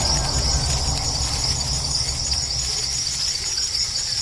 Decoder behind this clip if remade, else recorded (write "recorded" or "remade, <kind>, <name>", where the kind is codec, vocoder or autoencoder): recorded